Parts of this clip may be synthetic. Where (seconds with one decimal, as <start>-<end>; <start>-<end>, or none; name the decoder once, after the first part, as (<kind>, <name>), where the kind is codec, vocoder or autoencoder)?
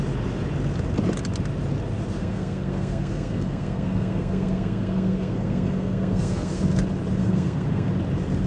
2.2-6.6 (codec, SNAC); 7.2-7.9